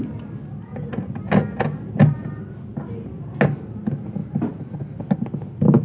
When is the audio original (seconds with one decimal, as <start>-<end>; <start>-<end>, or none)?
0.0-5.8